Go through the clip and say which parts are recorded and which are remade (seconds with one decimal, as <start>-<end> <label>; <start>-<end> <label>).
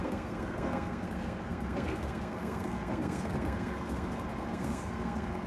0.0-5.5 remade